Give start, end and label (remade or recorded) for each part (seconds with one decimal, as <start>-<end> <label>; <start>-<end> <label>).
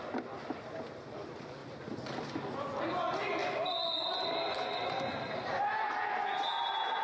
0.0-7.0 recorded